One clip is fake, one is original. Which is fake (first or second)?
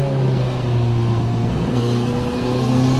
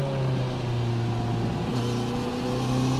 first